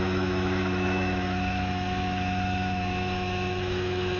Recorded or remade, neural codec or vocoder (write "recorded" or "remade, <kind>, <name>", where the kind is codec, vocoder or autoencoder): remade, autoencoder, DAC-VAE